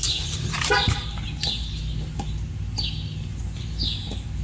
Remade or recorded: recorded